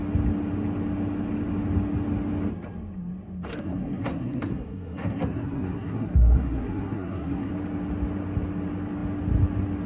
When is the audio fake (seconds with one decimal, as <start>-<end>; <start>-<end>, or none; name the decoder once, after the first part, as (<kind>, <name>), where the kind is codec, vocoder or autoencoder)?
3.5-7.5 (codec, SNAC)